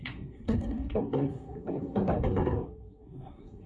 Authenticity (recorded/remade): remade